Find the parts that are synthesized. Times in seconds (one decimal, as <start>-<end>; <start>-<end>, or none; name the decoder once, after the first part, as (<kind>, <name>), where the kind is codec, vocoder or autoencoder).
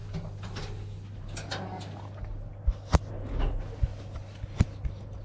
none